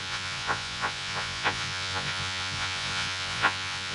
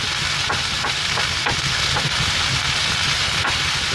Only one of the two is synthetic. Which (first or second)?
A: first